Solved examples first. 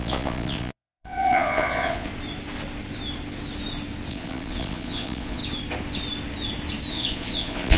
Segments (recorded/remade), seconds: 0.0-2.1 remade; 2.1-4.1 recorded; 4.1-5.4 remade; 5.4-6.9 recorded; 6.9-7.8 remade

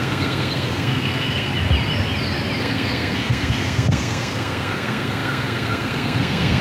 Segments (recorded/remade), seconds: 0.0-1.5 remade; 1.5-2.6 recorded; 2.6-6.6 remade